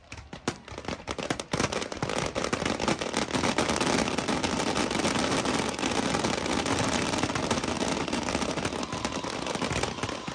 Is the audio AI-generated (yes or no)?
no